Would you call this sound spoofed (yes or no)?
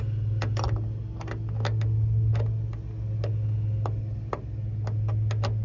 no